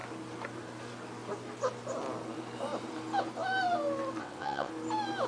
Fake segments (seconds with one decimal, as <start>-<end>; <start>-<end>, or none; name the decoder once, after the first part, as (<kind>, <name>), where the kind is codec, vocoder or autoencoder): 4.2-4.7 (vocoder, WaveNeXt)